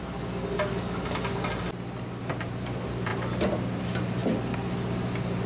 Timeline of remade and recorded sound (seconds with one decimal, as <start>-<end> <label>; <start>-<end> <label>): 0.0-5.5 recorded